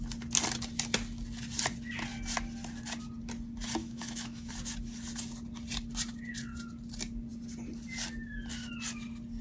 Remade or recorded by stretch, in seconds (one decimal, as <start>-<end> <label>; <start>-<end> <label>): 0.0-3.8 recorded; 3.8-4.5 remade; 4.5-9.4 recorded